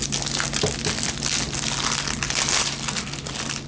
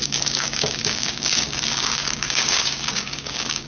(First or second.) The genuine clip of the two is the first